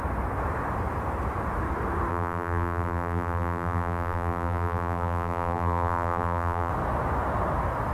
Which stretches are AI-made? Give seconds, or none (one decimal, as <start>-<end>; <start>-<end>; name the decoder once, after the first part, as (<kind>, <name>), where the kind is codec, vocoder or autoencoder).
2.1-6.7 (vocoder, BigVGAN v2)